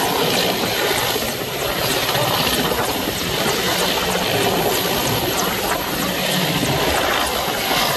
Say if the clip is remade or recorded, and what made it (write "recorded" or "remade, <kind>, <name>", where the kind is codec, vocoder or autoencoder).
remade, vocoder, BigVGAN v2